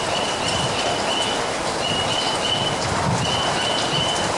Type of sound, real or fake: real